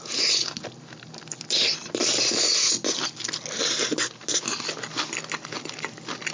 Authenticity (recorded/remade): recorded